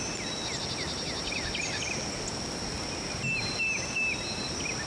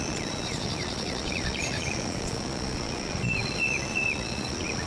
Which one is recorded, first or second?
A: first